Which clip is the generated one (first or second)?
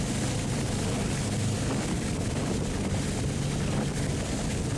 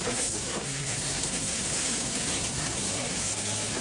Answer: second